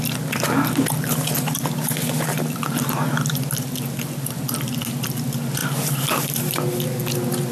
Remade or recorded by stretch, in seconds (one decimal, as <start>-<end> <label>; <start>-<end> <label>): 0.0-7.5 recorded

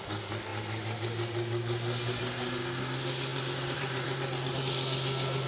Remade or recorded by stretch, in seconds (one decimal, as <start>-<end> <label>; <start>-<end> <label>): 0.0-3.3 recorded; 3.3-4.6 remade; 4.6-5.5 recorded

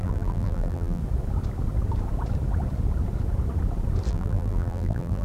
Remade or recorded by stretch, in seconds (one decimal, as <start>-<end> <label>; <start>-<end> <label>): 0.0-1.0 remade; 1.0-4.1 recorded; 4.1-5.2 remade

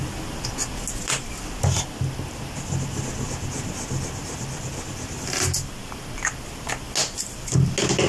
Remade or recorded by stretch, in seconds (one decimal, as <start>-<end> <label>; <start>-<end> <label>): 0.0-8.1 recorded

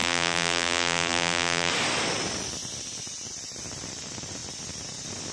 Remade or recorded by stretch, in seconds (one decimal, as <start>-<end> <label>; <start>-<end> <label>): 0.0-1.7 remade; 1.7-5.3 recorded

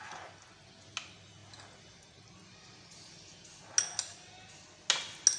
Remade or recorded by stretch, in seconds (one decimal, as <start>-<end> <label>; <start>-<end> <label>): 0.0-5.4 recorded